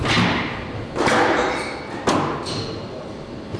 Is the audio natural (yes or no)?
yes